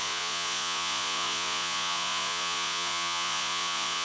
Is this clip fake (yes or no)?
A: yes